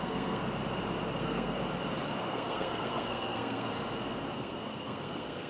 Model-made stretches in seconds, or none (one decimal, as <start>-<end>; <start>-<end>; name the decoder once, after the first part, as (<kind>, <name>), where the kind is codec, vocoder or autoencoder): 0.0-0.4 (codec, SNAC); 1.2-1.6; 2.2-3.7; 4.3-5.5